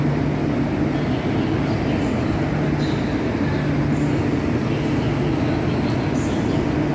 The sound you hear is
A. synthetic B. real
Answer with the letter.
B